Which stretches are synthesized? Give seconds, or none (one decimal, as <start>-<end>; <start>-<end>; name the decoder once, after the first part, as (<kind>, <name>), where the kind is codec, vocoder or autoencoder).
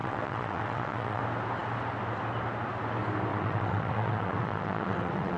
0.0-1.2 (vocoder, WaveNeXt); 3.3-5.4